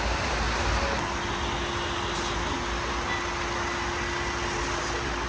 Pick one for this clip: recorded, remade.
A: recorded